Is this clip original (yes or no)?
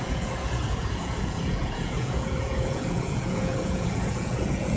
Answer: no